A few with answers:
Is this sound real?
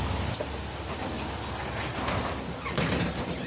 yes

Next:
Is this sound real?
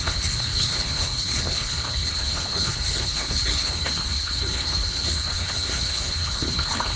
no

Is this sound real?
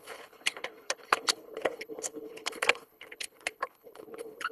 no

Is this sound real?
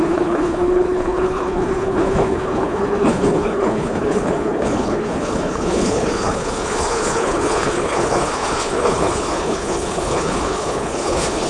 no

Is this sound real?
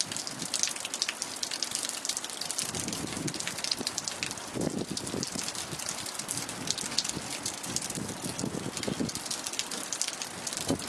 yes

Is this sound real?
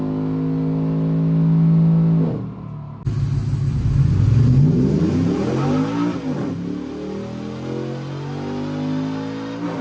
yes